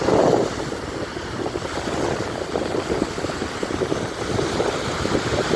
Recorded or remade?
recorded